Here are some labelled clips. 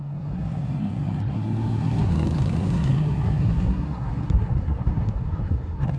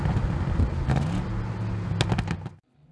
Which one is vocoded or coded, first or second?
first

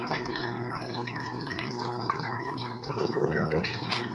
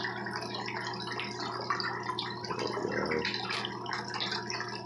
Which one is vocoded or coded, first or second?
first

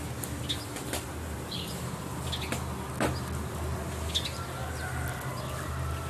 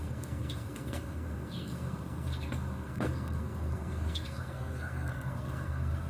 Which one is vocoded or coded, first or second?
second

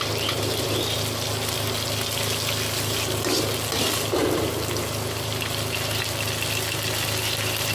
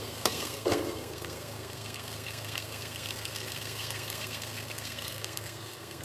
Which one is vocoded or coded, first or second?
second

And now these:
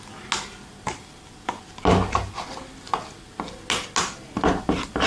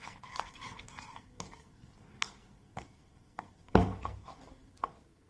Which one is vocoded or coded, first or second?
second